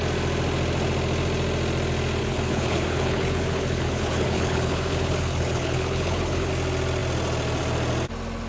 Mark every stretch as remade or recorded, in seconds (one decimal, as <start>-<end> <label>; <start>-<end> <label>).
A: 0.0-2.2 recorded; 2.2-6.5 remade; 6.5-8.5 recorded